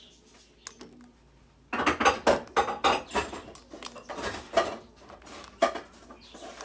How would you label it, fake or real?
real